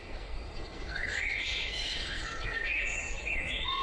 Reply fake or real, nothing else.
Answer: fake